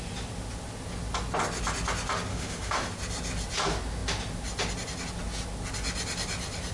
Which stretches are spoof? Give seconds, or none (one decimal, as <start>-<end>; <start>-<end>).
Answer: 2.3-2.9